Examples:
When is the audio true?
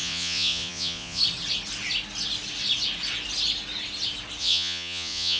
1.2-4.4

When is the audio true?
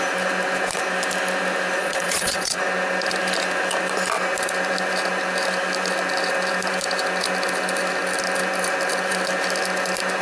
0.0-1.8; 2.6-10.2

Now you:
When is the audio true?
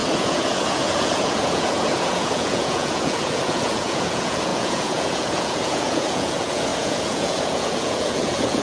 none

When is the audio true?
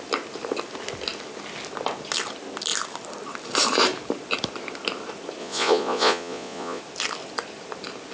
0.0-5.4; 6.8-8.1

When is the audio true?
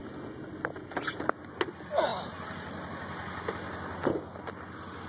0.0-5.1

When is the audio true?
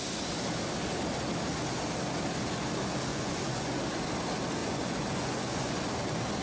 0.0-3.1; 3.7-4.6; 5.8-6.4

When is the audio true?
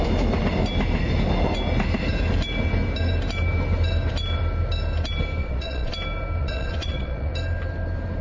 0.0-5.4; 5.9-6.4; 7.3-8.2